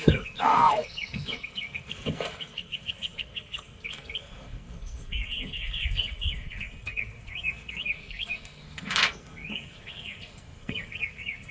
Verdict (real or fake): fake